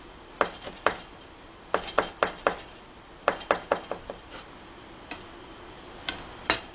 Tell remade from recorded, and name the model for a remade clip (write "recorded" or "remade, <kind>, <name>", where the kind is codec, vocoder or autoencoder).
recorded